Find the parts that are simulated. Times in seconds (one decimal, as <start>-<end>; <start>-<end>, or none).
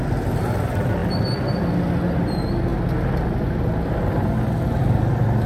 none